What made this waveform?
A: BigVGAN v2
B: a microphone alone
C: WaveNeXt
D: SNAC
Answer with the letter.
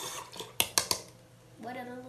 B